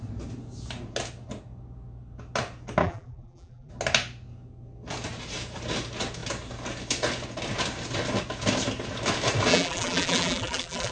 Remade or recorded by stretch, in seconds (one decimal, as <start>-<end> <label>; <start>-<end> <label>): 0.0-2.8 recorded; 2.8-3.7 remade; 3.7-9.5 recorded; 9.5-10.9 remade